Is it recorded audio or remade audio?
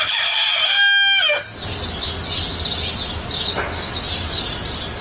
recorded